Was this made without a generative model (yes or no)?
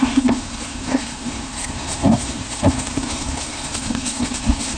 no